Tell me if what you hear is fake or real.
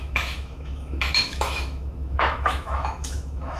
fake